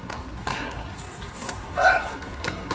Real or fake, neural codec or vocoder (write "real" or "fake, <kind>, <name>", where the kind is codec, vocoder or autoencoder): fake, codec, SNAC